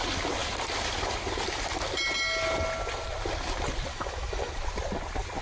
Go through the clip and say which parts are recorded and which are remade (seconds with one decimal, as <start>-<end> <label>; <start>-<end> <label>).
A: 0.0-3.9 recorded; 3.9-4.5 remade; 4.5-5.4 recorded